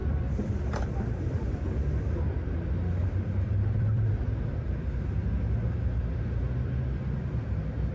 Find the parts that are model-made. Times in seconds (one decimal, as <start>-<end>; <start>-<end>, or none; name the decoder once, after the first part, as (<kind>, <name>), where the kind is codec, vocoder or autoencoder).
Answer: 0.0-2.0 (vocoder, BigVGAN v2); 3.0-4.1